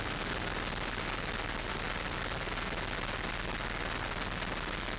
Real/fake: real